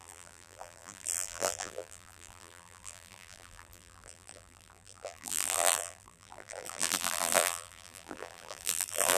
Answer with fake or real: fake